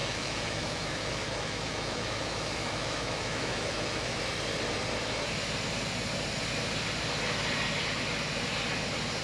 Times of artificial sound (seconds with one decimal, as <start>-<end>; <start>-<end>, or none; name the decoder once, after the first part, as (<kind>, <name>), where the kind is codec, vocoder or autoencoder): 0.0-4.2 (autoencoder, DAC-VAE)